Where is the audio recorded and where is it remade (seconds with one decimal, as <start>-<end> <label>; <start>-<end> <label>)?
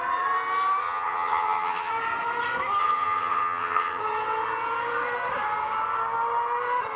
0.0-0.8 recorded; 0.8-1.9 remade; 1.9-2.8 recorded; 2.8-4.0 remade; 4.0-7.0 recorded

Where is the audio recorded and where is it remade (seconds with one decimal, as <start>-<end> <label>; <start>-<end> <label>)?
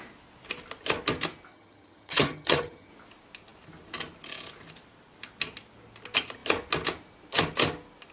0.0-1.5 recorded; 1.5-2.9 remade; 2.9-8.1 recorded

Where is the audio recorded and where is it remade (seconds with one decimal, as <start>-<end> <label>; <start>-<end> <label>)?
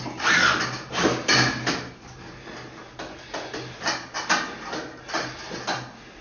0.0-6.2 recorded